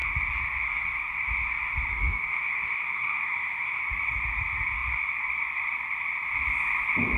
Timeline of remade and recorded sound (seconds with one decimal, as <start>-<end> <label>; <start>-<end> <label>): 0.0-1.9 recorded; 1.9-3.8 remade; 3.8-7.2 recorded